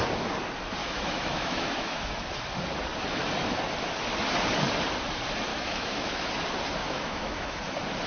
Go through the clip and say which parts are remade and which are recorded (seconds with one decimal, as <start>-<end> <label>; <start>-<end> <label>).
0.0-0.8 recorded; 0.8-2.1 remade; 2.1-5.5 recorded; 5.5-6.3 remade; 6.3-6.8 recorded; 6.8-7.6 remade; 7.6-8.1 recorded